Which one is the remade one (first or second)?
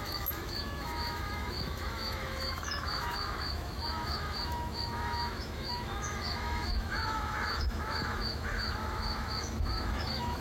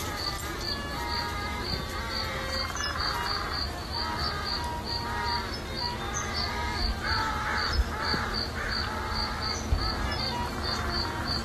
first